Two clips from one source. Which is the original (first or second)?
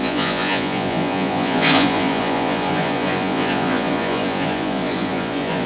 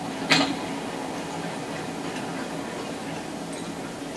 second